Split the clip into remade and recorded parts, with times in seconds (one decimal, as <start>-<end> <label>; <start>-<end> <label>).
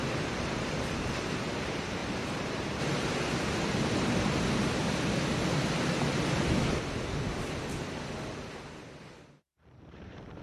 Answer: 0.0-4.8 remade; 4.8-9.0 recorded; 9.0-10.4 remade